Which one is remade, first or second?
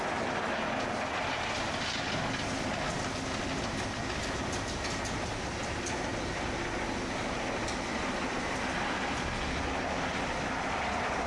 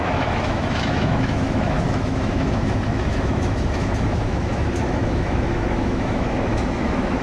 second